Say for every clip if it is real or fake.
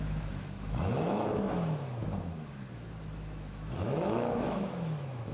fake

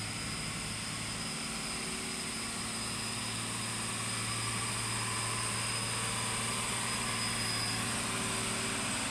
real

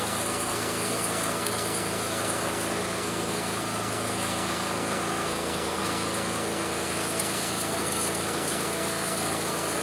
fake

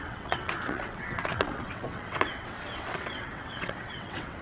fake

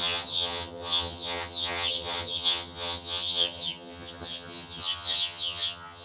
fake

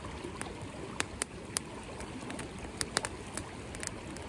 real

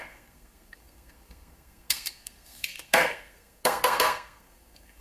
fake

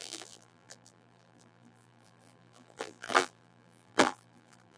fake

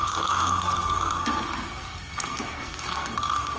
fake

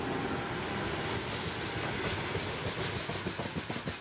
real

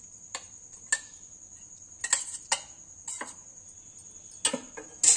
real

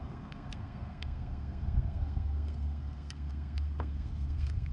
fake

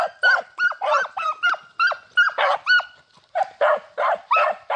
real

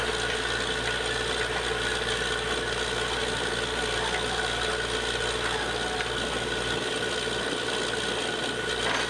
real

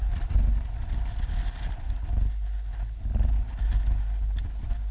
real